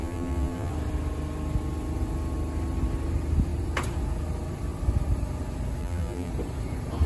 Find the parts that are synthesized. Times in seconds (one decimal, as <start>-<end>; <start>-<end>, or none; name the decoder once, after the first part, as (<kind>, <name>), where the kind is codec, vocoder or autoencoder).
0.0-0.7 (vocoder, BigVGAN v2); 5.8-6.3